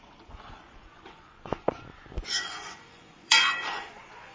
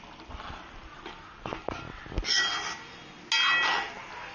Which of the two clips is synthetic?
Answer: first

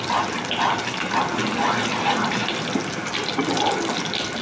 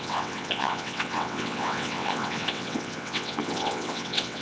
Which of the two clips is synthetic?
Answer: second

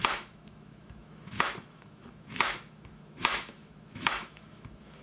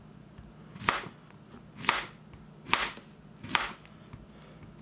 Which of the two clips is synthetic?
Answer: first